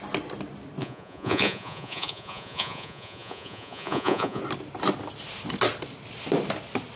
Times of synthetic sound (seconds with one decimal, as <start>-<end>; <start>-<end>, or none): 0.8-4.4

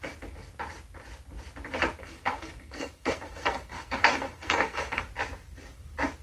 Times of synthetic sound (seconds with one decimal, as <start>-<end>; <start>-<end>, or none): 2.0-5.0

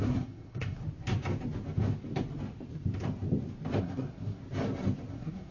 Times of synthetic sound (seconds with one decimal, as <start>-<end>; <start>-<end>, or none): 0.0-0.8; 3.8-4.4; 5.1-5.5

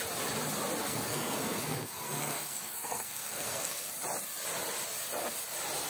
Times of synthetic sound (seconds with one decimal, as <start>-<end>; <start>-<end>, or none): 0.8-3.9

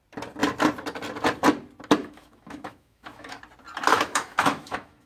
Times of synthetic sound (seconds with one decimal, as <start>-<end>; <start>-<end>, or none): 2.0-3.4; 3.9-5.1